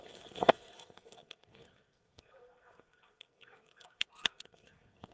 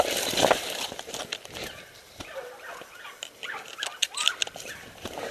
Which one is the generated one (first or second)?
first